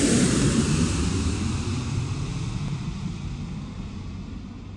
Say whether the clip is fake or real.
real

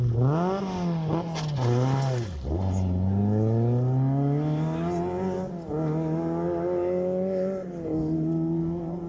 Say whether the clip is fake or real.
real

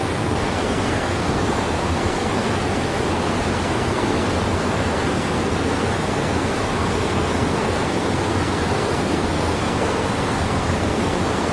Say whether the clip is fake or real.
fake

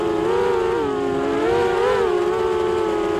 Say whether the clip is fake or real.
real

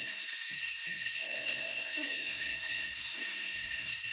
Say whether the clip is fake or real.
fake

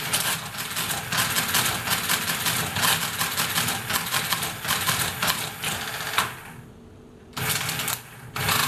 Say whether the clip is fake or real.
real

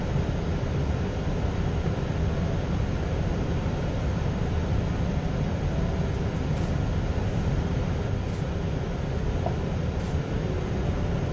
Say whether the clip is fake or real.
real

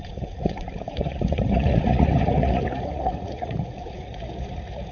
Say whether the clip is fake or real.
fake